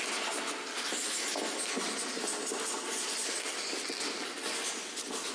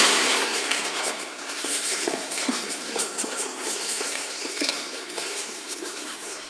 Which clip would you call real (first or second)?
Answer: first